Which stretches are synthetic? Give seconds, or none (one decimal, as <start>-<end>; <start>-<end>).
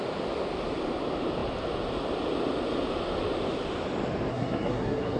4.3-5.2